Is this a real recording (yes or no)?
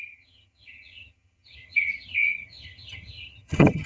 no